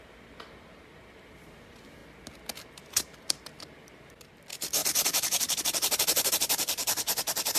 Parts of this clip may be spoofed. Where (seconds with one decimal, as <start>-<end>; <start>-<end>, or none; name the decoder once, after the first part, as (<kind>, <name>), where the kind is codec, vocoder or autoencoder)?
0.0-2.0 (vocoder, BigVGAN v2); 3.4-6.8